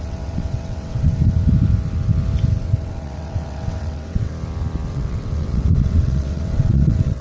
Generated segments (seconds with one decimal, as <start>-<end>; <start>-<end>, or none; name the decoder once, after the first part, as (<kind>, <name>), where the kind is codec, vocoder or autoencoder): 0.0-1.1 (vocoder, WaveNeXt); 2.6-4.3; 4.9-7.2